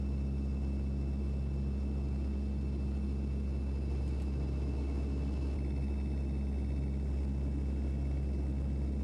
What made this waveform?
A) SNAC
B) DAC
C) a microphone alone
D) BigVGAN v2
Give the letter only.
C